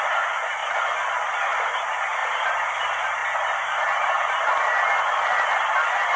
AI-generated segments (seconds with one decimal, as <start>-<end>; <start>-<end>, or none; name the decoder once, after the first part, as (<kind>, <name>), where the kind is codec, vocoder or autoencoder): 3.2-4.5 (vocoder, BigVGAN v2)